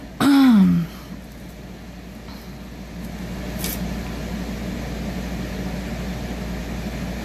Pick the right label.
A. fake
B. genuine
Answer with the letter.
B